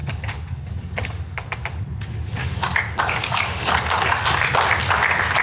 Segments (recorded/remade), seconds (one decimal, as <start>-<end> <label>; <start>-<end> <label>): 0.0-2.0 remade; 2.0-2.4 recorded; 2.4-4.3 remade; 4.3-5.4 recorded